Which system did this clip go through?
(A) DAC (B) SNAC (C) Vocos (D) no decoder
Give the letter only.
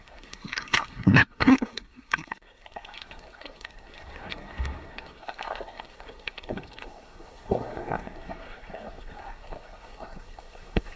B